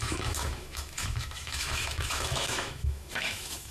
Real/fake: fake